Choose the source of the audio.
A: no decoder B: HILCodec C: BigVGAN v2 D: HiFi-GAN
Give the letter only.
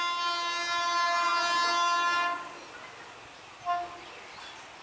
A